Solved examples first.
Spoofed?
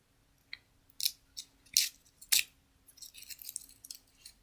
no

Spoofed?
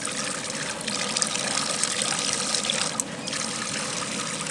no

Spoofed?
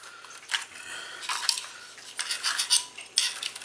no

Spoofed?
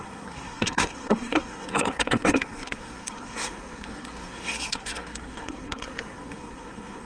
yes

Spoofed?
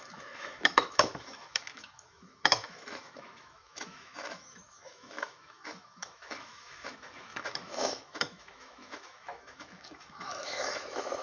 yes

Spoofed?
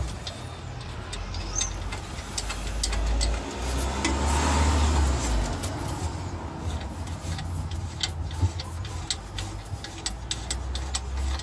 no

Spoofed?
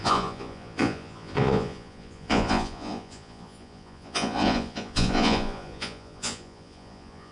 yes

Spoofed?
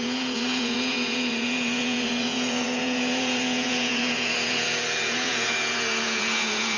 yes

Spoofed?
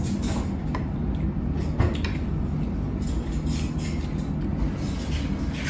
no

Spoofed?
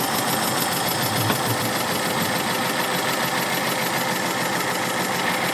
no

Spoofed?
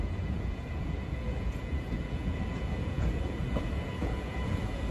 yes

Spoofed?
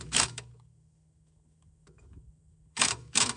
yes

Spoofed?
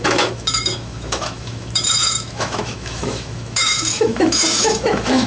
yes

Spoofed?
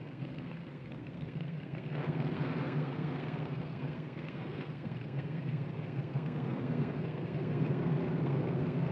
yes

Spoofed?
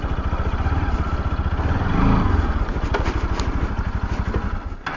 no